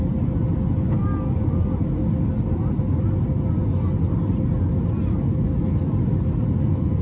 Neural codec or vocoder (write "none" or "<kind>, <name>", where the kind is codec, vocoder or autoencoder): none